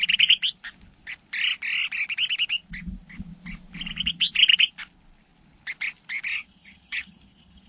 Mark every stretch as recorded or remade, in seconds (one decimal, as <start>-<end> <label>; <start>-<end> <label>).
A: 0.0-6.3 recorded; 6.3-7.7 remade

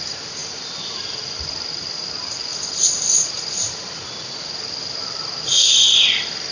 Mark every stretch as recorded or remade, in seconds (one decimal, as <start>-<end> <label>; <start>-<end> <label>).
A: 0.0-6.5 remade